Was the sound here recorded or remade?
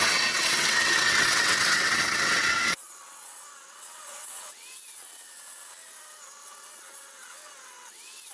remade